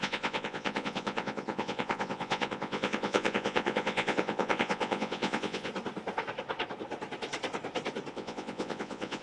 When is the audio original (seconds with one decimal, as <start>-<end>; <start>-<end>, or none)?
5.7-8.1